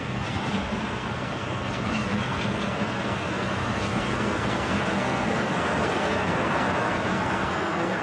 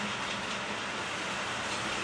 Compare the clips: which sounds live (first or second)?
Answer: second